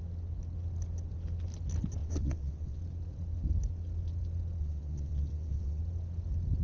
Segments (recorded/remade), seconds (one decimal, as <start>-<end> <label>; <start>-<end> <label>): 0.0-2.0 recorded; 2.0-2.8 remade; 2.8-4.6 recorded; 4.6-5.8 remade; 5.8-6.6 recorded